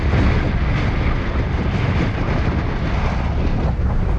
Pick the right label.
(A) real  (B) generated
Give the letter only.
A